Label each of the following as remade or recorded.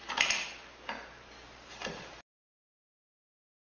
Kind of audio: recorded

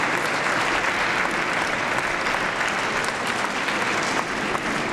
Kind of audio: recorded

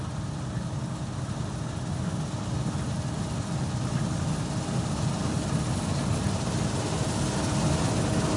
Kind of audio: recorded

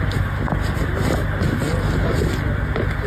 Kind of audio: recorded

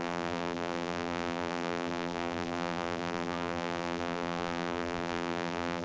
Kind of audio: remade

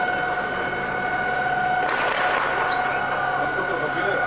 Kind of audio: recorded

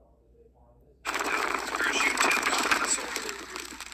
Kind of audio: remade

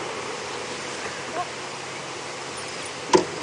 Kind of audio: recorded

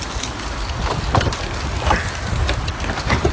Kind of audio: recorded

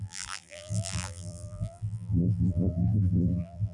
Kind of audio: remade